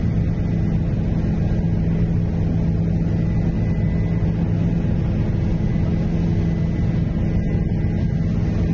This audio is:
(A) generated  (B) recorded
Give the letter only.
B